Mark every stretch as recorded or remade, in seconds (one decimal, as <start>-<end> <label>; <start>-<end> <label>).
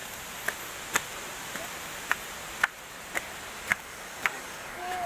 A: 0.0-3.7 recorded; 3.7-5.1 remade